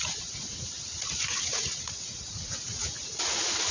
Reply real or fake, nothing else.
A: fake